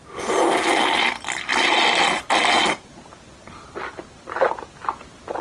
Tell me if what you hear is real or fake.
real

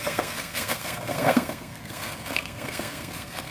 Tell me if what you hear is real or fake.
fake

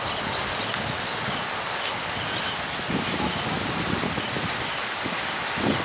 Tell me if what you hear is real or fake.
real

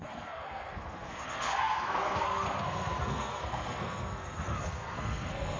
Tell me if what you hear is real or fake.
fake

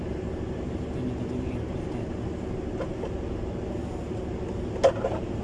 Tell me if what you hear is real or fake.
real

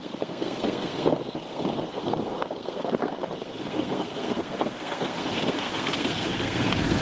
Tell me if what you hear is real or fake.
fake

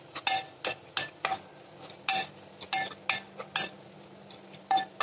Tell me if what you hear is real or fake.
real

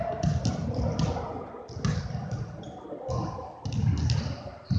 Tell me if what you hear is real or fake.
real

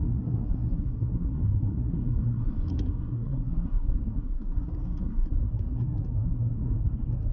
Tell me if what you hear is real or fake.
fake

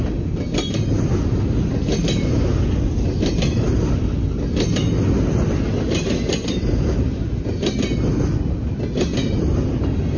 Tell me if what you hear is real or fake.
real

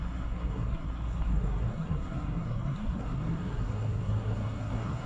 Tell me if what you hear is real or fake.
fake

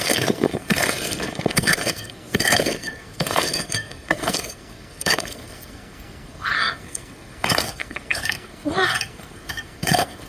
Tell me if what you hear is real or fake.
fake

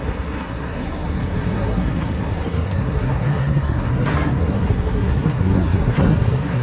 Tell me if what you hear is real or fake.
fake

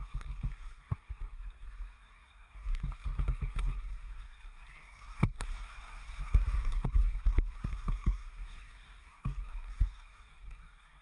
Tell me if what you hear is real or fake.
fake